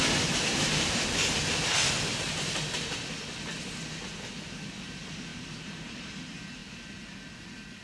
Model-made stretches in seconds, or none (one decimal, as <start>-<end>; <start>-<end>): 0.5-1.5; 2.1-2.9; 5.3-6.1